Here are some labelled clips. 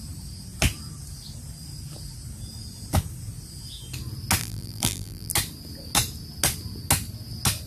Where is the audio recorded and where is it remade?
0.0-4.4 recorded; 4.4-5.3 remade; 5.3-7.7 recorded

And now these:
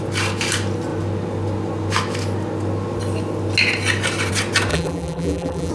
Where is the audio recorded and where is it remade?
0.0-4.7 recorded; 4.7-5.7 remade

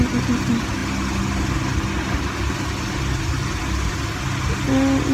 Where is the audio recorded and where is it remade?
0.0-5.1 recorded

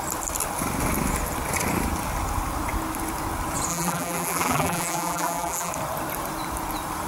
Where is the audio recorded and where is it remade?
0.0-3.7 recorded; 3.7-5.7 remade; 5.7-7.1 recorded

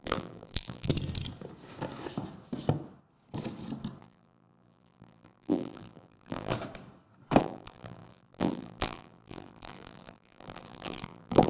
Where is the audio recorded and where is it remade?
0.0-0.9 remade; 0.9-4.0 recorded; 4.0-6.5 remade; 6.5-7.4 recorded; 7.4-11.5 remade

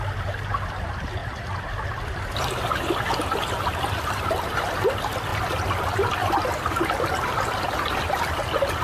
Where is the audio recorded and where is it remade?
0.0-8.8 recorded